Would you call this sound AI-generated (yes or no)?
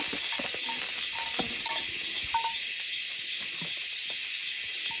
no